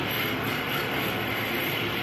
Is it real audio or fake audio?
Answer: real